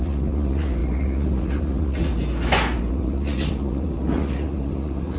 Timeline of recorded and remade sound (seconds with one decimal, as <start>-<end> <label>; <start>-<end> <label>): 0.0-2.1 remade; 2.1-2.9 recorded; 2.9-5.2 remade